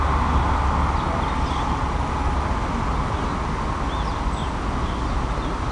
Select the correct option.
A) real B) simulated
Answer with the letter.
A